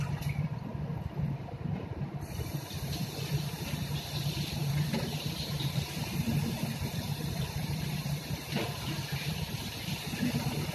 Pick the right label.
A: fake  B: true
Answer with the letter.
A